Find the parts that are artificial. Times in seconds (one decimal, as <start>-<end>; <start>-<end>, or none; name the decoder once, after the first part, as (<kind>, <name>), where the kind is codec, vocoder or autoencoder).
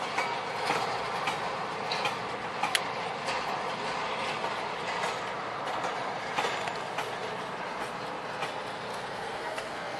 8.9-10.0 (codec, SNAC)